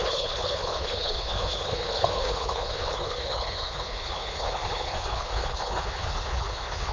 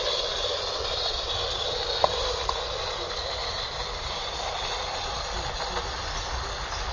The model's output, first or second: first